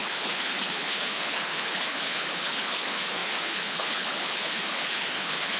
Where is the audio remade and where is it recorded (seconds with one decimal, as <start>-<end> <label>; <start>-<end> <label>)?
0.0-5.6 remade